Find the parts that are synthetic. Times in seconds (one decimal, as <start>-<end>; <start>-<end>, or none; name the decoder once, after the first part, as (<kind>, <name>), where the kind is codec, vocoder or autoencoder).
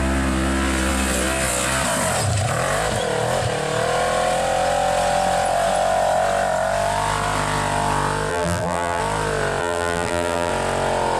8.3-9.0 (vocoder, BigVGAN v2); 9.6-10.5